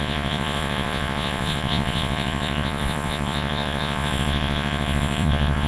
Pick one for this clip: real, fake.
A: fake